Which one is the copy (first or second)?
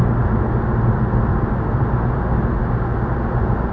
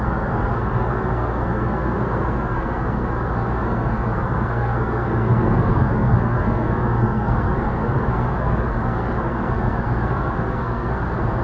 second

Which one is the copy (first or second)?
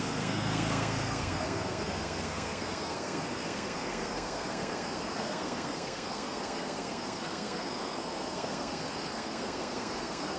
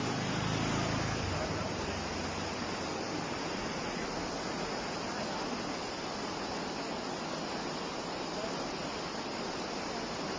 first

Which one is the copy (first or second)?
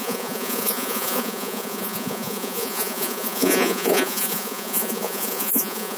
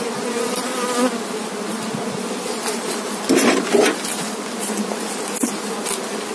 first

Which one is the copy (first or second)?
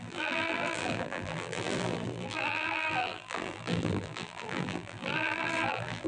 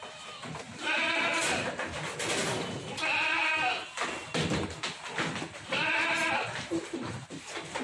first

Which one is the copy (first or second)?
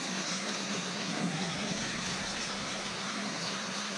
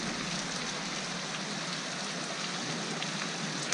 first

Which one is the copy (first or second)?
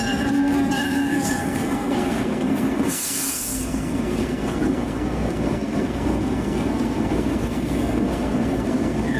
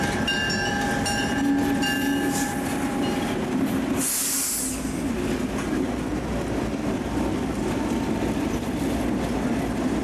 first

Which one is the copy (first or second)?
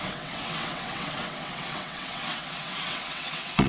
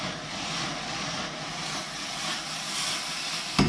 first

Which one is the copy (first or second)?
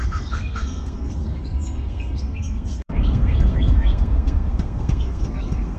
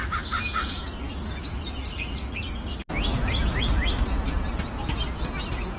first